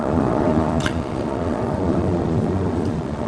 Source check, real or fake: fake